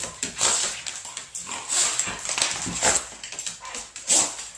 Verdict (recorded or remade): recorded